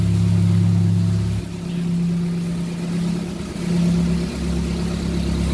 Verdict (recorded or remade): recorded